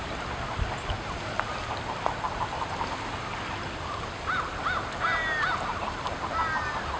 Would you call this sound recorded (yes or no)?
yes